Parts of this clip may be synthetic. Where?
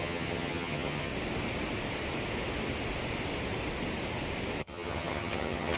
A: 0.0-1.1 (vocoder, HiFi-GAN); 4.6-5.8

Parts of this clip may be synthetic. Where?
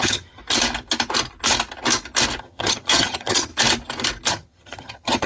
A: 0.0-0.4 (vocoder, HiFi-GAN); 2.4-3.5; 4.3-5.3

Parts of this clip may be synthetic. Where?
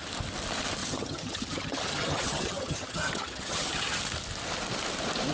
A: 0.8-4.0 (vocoder, HiFi-GAN)